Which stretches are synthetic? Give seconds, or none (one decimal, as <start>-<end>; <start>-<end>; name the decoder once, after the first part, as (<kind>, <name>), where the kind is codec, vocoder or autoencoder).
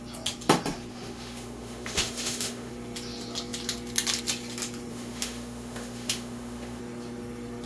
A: 0.9-2.7 (autoencoder, DAC-VAE); 4.9-6.8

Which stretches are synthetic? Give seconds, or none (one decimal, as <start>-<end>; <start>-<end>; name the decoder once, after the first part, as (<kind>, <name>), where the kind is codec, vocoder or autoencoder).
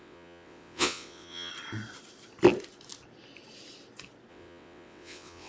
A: 0.0-1.5 (vocoder, WaveNeXt); 4.3-5.5